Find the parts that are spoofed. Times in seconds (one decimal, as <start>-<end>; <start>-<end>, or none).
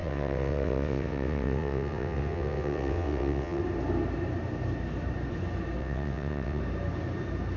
0.0-3.6; 5.8-6.6